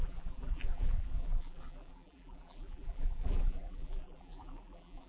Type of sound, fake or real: fake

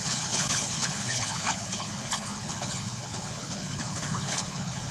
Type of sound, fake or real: fake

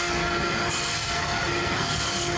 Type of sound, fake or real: fake